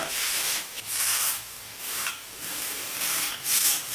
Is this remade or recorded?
remade